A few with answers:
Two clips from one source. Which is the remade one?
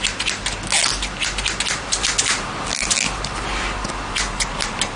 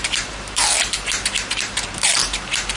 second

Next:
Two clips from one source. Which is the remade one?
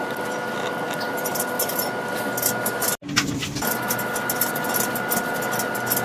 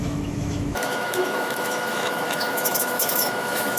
second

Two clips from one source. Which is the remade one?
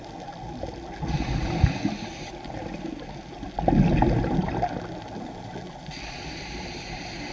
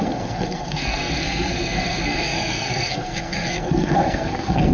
second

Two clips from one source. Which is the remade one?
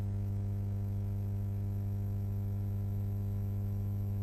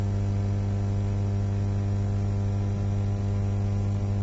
first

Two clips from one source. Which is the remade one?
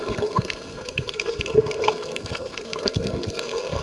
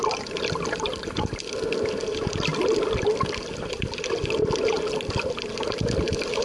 first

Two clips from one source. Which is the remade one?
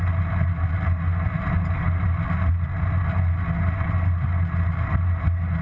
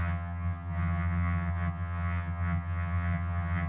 second